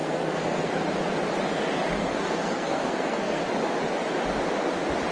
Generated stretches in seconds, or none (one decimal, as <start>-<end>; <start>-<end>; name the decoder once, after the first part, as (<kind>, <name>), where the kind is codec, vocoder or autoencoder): 0.0-0.7 (codec, SNAC); 2.0-3.4